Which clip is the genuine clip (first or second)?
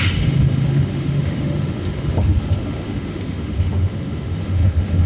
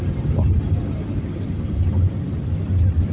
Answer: second